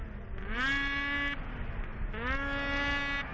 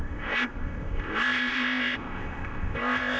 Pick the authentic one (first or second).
first